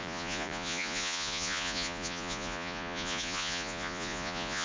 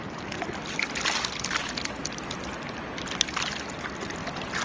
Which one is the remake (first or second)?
first